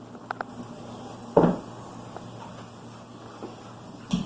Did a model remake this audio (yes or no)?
no